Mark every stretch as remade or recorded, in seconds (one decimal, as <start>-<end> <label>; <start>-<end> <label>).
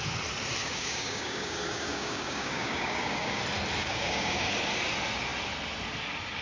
0.0-0.6 recorded; 0.6-3.4 remade; 3.4-3.8 recorded; 3.8-4.4 remade; 4.4-6.4 recorded